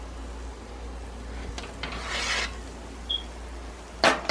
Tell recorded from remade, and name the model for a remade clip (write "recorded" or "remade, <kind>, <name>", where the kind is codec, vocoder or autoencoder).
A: recorded